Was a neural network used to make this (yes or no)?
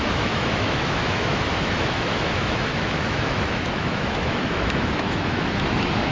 yes